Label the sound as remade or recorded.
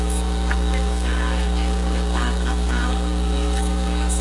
remade